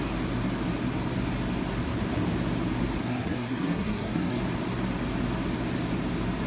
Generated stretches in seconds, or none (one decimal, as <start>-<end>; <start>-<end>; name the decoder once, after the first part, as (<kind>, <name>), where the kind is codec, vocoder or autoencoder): 3.0-4.4 (codec, SNAC)